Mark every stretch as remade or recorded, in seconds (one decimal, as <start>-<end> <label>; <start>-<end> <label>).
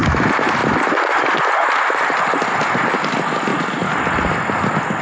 0.0-5.0 recorded